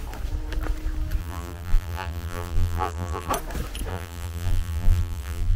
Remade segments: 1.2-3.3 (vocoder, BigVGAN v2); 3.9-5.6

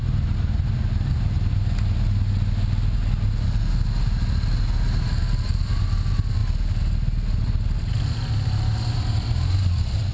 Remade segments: none

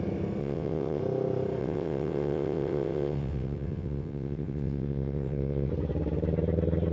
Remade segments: 0.4-1.0 (vocoder, WaveNeXt); 1.6-5.7